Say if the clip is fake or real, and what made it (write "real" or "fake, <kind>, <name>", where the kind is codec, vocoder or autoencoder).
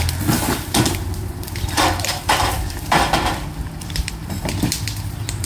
fake, vocoder, BigVGAN v2